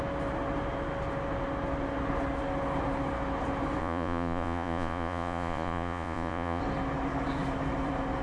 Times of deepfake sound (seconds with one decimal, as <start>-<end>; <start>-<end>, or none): 3.8-6.6